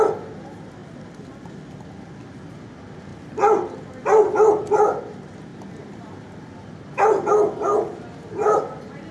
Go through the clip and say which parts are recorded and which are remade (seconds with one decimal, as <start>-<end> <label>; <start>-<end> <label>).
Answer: 0.0-3.1 recorded; 3.1-3.8 remade; 3.8-5.5 recorded; 5.5-6.4 remade; 6.4-9.1 recorded